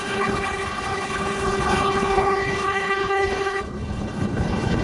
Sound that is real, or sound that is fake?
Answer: fake